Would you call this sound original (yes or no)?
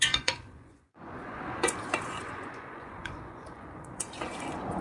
no